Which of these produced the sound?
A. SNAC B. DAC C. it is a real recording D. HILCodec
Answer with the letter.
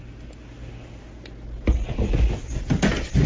C